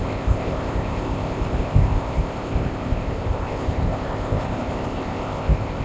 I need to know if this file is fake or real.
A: fake